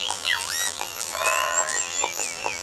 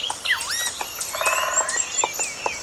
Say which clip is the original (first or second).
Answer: second